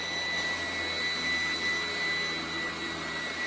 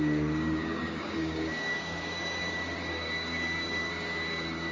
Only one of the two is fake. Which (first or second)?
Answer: second